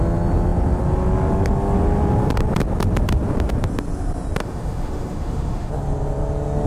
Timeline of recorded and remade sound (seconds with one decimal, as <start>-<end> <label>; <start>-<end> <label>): 0.0-4.4 recorded; 4.4-5.7 remade; 5.7-6.7 recorded